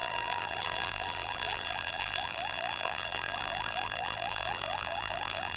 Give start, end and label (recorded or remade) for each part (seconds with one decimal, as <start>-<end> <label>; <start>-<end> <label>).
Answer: 0.0-5.6 remade